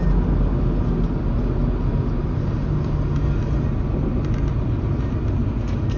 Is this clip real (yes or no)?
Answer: yes